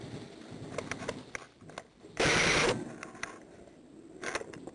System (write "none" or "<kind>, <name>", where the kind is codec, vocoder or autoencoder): none